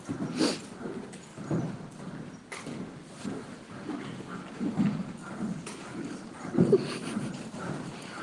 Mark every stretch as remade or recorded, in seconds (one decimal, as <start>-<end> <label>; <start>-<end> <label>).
0.0-1.3 recorded; 1.3-2.1 remade; 2.1-3.0 recorded; 3.0-3.9 remade; 3.9-5.2 recorded; 5.2-8.2 remade

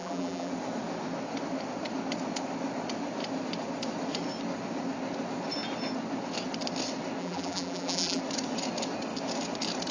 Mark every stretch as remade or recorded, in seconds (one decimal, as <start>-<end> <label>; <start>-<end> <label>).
0.0-0.5 remade; 0.5-7.2 recorded; 7.2-8.2 remade; 8.2-9.9 recorded

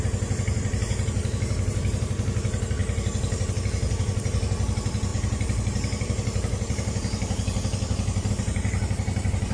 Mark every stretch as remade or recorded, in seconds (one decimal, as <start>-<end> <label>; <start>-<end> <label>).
0.0-9.5 remade

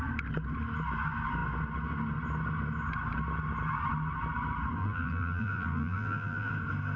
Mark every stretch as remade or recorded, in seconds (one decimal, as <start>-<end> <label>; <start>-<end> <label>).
0.0-4.8 recorded; 4.8-6.5 remade; 6.5-7.0 recorded

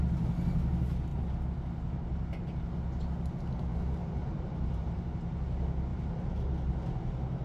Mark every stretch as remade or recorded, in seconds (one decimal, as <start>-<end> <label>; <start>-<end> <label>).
0.0-3.7 recorded; 3.7-5.0 remade; 5.0-5.9 recorded; 5.9-6.4 remade; 6.4-7.4 recorded

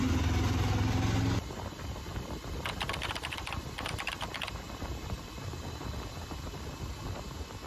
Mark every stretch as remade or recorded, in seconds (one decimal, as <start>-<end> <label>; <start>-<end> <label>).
0.0-2.1 recorded; 2.1-2.6 remade; 2.6-3.0 recorded; 3.0-5.4 remade; 5.4-7.7 recorded